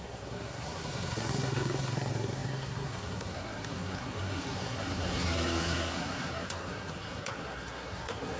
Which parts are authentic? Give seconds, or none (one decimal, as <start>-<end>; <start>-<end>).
none